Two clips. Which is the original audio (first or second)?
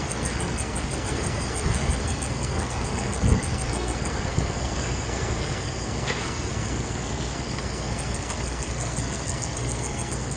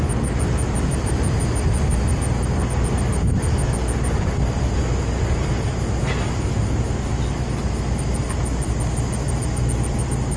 second